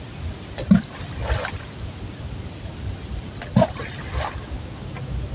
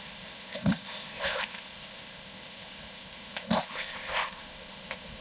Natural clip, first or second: first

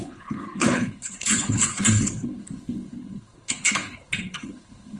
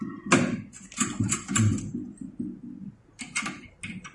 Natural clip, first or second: second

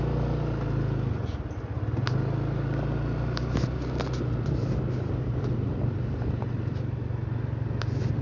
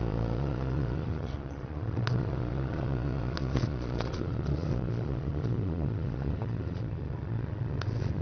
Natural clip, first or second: first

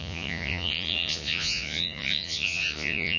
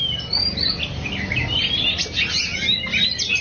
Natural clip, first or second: second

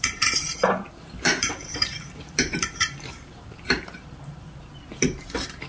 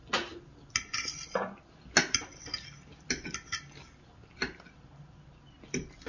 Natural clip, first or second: second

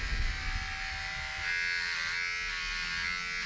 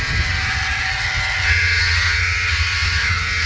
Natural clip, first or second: first